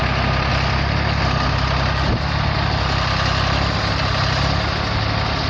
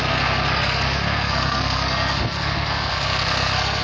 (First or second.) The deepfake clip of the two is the second